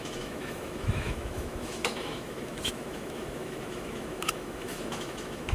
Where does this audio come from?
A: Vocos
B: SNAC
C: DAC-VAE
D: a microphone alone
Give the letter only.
C